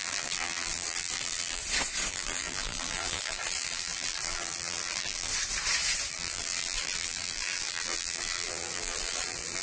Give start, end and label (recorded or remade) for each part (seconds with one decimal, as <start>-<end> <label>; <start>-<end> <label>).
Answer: 0.0-1.6 remade; 1.6-2.1 recorded; 2.1-5.3 remade; 5.3-6.1 recorded; 6.1-9.6 remade